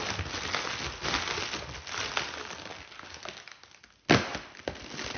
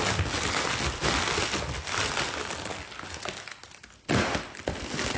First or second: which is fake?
second